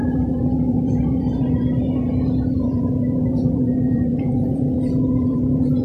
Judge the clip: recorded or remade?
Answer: remade